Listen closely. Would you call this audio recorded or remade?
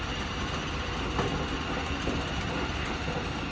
recorded